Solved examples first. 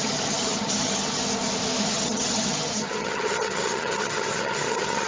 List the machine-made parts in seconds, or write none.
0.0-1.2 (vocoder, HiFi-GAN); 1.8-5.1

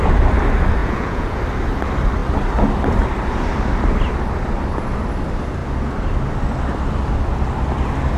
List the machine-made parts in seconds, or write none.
0.8-1.4 (vocoder, Vocos)

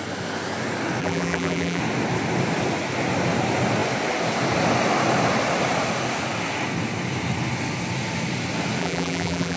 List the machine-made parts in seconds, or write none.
1.0-1.8 (vocoder, BigVGAN v2); 8.8-9.6

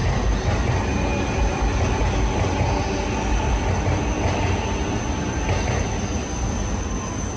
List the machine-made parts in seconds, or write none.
none

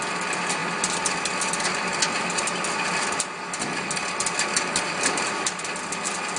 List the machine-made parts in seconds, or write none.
none

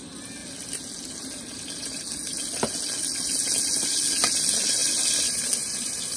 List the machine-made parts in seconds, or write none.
4.8-6.2 (vocoder, BigVGAN v2)

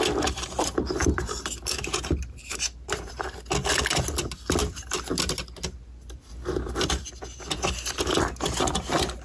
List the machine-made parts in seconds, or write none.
1.0-3.1 (vocoder, BigVGAN v2)

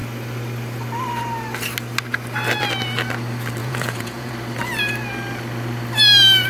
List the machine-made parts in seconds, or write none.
3.6-4.3 (vocoder, Vocos)